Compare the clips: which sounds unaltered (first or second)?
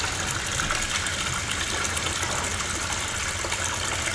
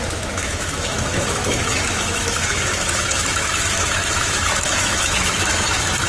first